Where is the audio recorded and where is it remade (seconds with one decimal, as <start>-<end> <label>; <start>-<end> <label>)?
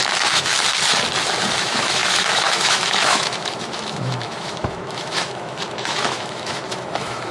0.0-0.5 remade; 0.5-1.6 recorded; 1.6-7.3 remade